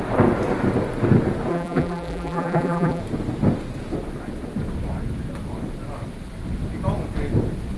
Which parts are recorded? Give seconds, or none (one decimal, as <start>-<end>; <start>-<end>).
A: 0.0-1.5; 3.0-7.8